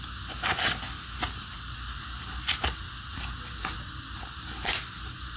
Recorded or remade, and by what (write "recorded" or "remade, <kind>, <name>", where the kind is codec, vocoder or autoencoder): recorded